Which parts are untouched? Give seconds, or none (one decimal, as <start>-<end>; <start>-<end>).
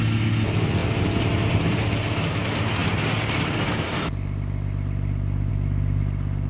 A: 0.0-6.5